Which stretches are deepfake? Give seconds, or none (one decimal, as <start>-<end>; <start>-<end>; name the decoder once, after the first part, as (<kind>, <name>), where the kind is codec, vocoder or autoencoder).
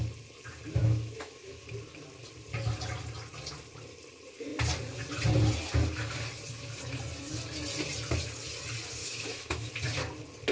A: 0.8-1.6 (autoencoder, DAC-VAE); 9.0-9.7